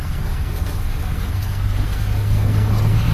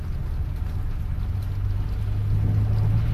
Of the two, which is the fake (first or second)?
first